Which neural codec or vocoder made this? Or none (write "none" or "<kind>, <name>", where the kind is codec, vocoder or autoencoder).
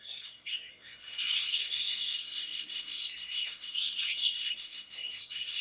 codec, SNAC